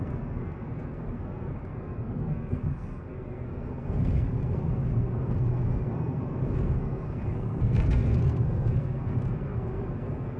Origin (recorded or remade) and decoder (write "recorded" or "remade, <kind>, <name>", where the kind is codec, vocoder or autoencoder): remade, codec, SNAC